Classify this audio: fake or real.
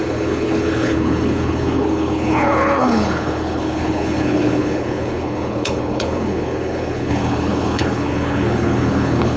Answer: fake